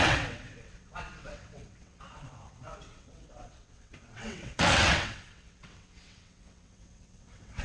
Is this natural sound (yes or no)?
no